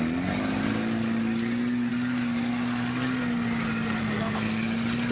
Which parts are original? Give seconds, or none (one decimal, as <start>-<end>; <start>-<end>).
0.0-5.1